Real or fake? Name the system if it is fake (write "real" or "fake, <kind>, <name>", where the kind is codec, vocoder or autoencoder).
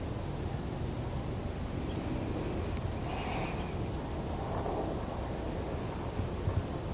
real